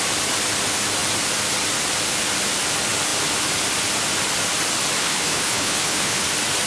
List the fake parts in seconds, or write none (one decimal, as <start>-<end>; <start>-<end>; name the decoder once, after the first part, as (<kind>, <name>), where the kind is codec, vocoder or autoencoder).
5.0-6.2 (codec, HILCodec)